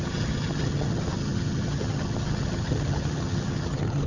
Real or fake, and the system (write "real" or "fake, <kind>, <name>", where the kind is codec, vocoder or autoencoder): fake, vocoder, HiFi-GAN